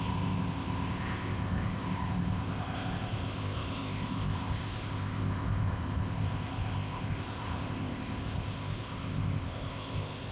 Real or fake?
fake